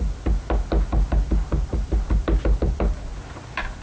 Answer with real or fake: real